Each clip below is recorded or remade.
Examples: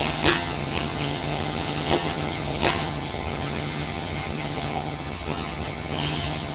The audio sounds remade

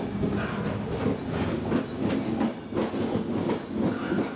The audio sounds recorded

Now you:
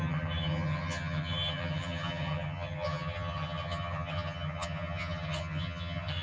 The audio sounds remade